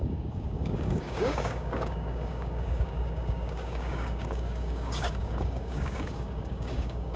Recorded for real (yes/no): no